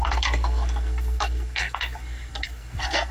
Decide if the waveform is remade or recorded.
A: remade